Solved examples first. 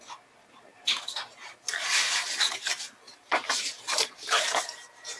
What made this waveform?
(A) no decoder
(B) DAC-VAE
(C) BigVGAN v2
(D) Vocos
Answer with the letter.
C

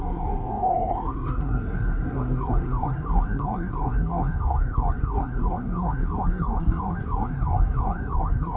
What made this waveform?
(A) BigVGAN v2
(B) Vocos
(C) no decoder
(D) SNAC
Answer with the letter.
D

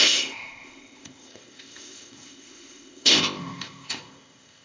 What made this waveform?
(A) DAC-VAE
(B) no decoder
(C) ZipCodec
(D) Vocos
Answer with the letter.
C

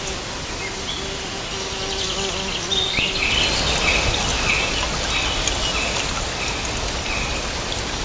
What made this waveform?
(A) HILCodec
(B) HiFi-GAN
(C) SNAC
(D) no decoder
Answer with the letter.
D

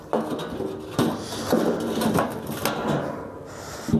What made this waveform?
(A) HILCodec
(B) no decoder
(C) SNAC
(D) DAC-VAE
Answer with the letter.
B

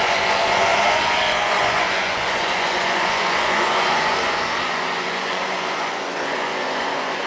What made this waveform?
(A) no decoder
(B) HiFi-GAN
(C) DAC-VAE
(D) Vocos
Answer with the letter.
D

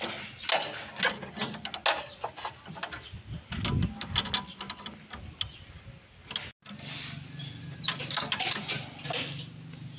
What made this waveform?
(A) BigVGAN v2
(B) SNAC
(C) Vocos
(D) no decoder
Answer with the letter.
D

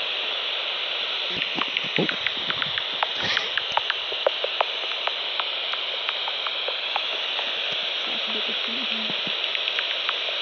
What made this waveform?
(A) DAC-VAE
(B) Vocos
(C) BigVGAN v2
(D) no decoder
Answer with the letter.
D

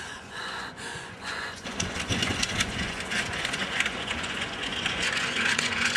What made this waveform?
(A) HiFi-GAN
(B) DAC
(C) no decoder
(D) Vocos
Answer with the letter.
D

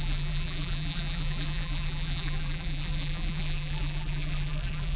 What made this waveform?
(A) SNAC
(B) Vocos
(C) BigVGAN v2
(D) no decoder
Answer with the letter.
C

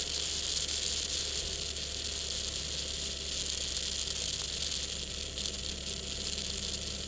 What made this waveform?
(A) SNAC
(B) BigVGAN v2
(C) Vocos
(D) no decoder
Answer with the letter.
D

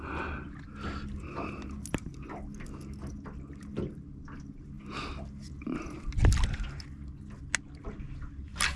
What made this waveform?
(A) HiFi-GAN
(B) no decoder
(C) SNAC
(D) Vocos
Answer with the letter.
B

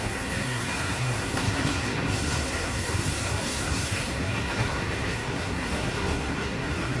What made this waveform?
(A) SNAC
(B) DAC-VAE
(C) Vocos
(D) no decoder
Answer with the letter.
A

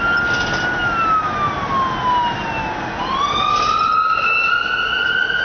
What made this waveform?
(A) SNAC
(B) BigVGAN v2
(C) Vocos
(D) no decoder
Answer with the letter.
D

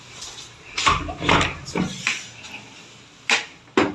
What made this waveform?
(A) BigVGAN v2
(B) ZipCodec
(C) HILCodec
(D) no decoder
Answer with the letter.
D